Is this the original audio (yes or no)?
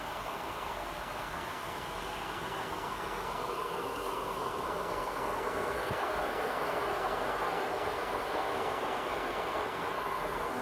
no